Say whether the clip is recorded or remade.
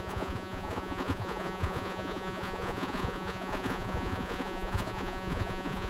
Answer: remade